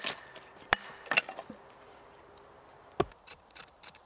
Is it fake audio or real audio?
real